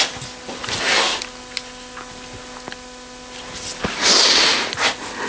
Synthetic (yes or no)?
no